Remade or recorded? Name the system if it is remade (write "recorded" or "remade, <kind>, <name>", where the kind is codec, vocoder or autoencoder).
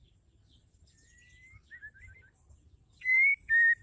recorded